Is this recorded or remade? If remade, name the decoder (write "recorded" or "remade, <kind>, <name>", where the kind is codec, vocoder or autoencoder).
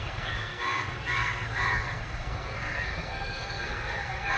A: remade, codec, SNAC